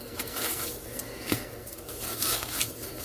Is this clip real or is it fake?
fake